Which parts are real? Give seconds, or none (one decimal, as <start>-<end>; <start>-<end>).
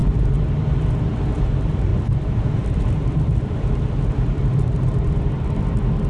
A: 0.0-1.9; 5.6-6.1